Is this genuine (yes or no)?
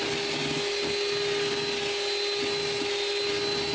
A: yes